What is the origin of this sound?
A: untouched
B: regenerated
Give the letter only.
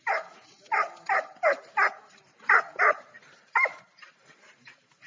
A